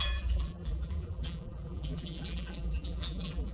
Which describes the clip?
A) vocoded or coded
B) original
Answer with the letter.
A